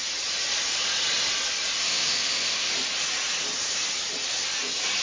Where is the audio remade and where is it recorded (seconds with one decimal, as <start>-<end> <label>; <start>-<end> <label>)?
0.0-1.8 recorded; 1.8-2.7 remade; 2.7-5.0 recorded